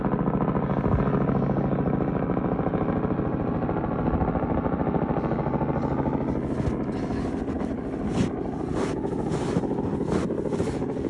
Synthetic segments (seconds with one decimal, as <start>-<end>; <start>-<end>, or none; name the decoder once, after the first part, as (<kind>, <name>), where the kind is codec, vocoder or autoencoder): none